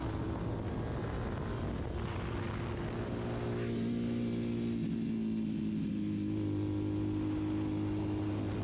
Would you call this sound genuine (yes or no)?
yes